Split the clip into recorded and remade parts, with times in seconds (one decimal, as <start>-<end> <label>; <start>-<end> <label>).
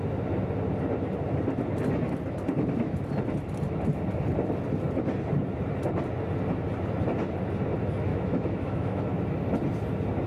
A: 0.0-8.1 recorded; 8.1-9.0 remade; 9.0-10.3 recorded